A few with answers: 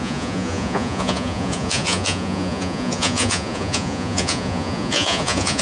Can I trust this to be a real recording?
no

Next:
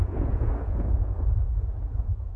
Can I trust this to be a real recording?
no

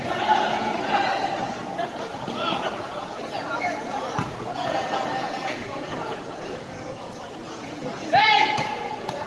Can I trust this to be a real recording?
no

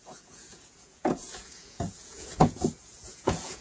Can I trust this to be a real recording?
no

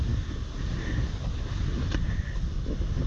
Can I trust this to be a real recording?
yes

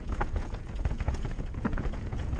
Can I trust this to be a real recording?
no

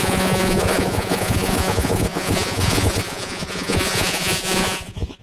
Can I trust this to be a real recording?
no